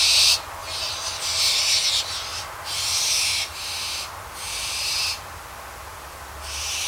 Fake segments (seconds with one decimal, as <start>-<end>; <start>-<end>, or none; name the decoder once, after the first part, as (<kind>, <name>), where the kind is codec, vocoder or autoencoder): 0.6-1.1 (vocoder, BigVGAN v2)